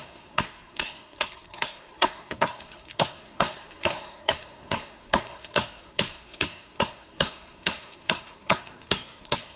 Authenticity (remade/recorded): remade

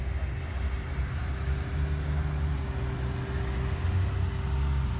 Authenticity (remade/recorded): recorded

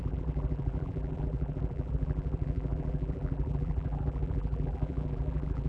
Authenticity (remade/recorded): remade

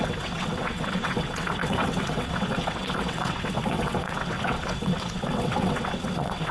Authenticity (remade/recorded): remade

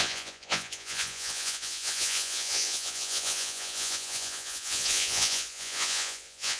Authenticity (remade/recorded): remade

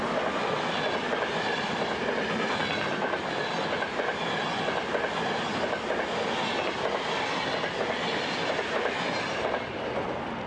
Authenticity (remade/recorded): recorded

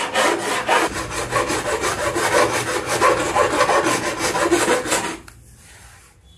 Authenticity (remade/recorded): recorded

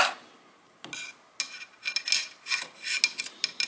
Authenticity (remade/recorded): recorded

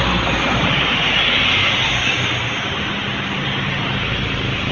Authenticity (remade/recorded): recorded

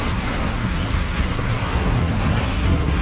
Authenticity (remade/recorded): remade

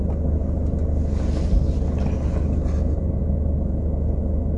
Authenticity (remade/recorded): recorded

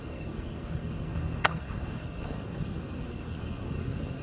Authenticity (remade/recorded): remade